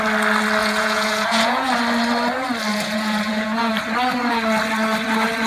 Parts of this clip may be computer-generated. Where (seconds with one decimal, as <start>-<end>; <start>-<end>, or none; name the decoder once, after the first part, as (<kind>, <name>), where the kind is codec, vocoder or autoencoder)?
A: 0.6-1.7 (vocoder, Vocos); 2.7-3.7